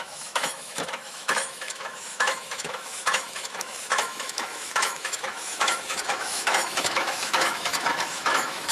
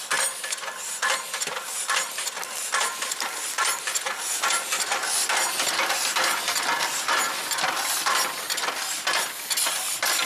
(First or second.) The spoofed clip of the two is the first